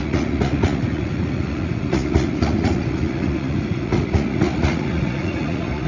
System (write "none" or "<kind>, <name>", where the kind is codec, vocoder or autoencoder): vocoder, Vocos